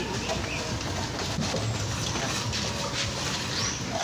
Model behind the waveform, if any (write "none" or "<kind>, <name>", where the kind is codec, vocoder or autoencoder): none